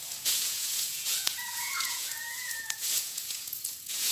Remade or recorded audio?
remade